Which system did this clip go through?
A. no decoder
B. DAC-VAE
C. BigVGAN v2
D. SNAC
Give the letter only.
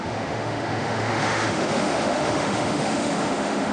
B